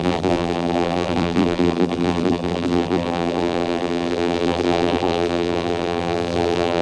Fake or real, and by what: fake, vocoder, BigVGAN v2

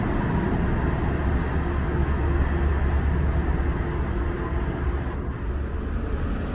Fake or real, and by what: real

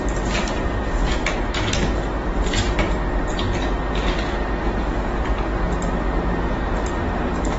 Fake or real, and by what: fake, vocoder, BigVGAN v2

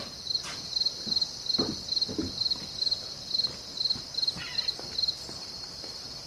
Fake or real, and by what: real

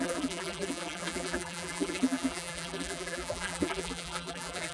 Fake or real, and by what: fake, vocoder, BigVGAN v2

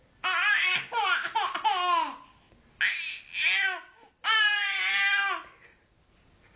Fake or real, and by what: real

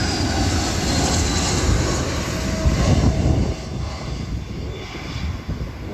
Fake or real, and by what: real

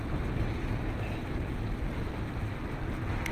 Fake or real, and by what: real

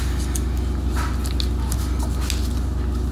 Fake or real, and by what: real